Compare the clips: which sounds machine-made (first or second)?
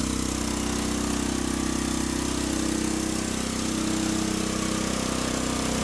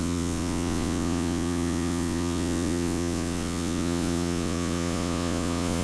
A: second